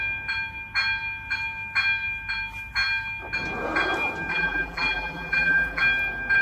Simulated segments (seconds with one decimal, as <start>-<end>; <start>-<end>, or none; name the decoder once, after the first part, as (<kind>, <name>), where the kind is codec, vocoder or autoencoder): 4.3-5.8 (vocoder, BigVGAN v2)